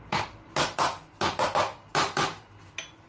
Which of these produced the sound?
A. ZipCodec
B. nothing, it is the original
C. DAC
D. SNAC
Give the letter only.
B